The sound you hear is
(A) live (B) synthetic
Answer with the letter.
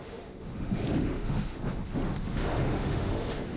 B